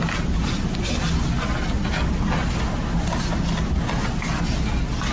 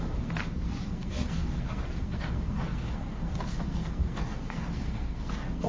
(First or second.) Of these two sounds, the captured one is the first